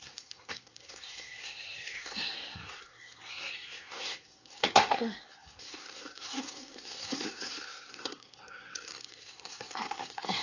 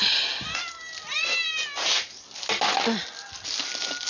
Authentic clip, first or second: second